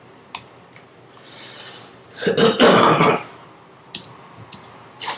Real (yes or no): yes